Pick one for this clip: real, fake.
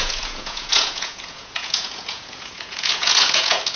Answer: fake